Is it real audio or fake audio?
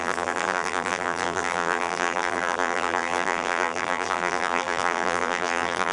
fake